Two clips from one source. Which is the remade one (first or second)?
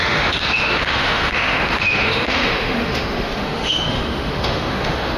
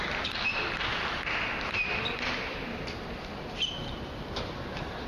first